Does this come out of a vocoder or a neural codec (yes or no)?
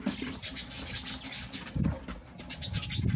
no